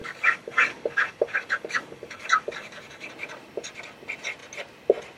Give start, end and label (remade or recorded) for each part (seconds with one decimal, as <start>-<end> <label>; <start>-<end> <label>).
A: 0.0-3.1 remade; 3.1-5.2 recorded